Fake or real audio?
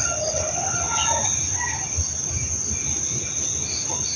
real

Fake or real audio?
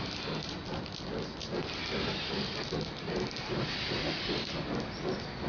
real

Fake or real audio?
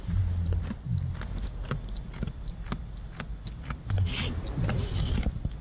real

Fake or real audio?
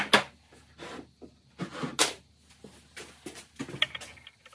real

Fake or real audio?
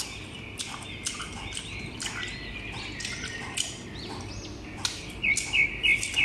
fake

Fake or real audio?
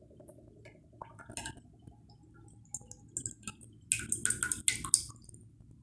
real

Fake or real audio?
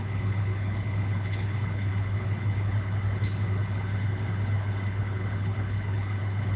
fake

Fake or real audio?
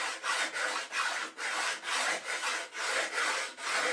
real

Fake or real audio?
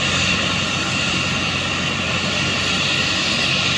fake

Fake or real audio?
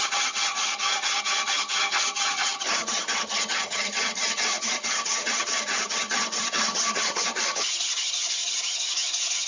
fake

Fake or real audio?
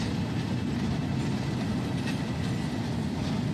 real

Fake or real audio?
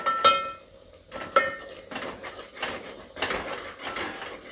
real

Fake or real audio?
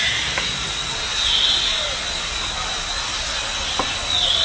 real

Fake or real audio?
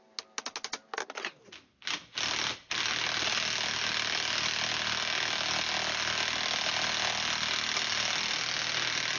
real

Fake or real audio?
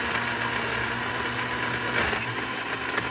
real